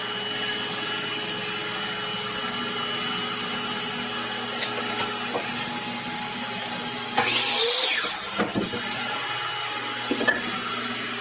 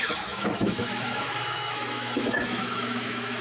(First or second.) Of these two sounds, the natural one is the first